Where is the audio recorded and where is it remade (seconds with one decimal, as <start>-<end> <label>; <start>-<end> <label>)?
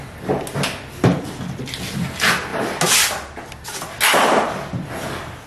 0.0-5.5 recorded